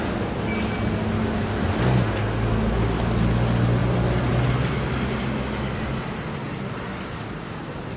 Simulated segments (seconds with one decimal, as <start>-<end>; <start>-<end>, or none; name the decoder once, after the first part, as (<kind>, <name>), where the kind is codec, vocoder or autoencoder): none